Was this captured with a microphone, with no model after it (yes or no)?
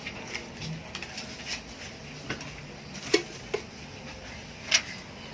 yes